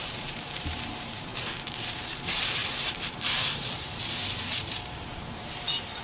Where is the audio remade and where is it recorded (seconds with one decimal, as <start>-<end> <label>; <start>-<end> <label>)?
0.0-1.3 remade; 1.3-1.9 recorded; 1.9-6.0 remade